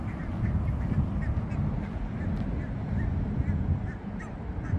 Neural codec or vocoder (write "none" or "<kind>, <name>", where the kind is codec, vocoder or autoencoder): none